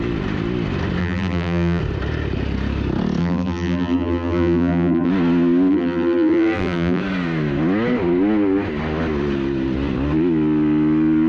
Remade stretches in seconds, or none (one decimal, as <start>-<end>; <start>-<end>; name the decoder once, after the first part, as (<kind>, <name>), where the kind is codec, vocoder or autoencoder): 1.0-1.8 (vocoder, BigVGAN v2); 3.2-5.1; 5.7-7.0